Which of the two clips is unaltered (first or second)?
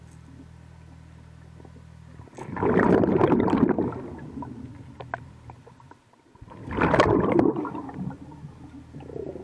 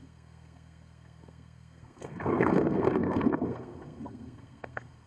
first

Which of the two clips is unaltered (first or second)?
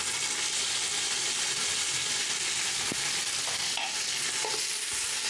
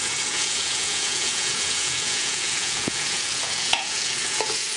first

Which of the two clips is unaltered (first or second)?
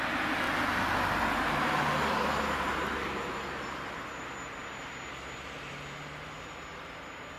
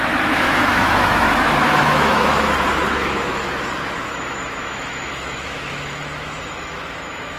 first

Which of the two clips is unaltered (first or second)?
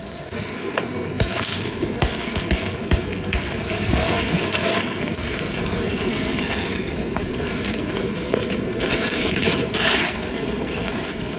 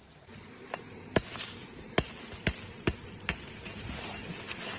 second